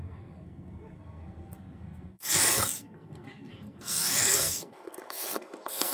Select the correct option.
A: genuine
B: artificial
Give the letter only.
B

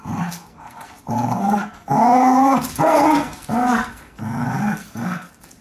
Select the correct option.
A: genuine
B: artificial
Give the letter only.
B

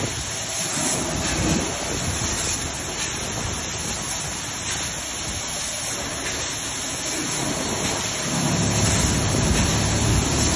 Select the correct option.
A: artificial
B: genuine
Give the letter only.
B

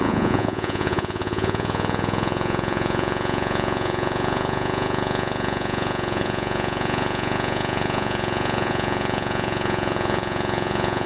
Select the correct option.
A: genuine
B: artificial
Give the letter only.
B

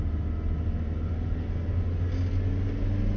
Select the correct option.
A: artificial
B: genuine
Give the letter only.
B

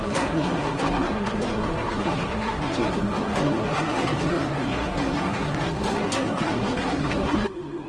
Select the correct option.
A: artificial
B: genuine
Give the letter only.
A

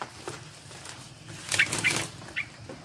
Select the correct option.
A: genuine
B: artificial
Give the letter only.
A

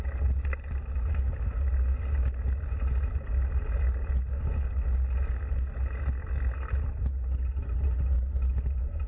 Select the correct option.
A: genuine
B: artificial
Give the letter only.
A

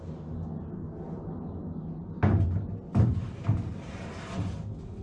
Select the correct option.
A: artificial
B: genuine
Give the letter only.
B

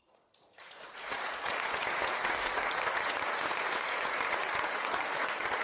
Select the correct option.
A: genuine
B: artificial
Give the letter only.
B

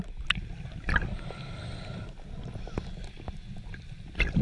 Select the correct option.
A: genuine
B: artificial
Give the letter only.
A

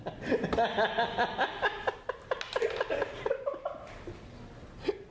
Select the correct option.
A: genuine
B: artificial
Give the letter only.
A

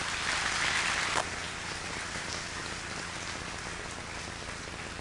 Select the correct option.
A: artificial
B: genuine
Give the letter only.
B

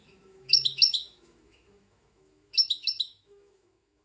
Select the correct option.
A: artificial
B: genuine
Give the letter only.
A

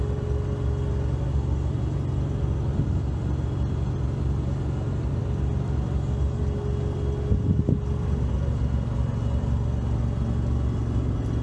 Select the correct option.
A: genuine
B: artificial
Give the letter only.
A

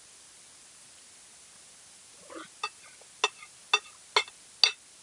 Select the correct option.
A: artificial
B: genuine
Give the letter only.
B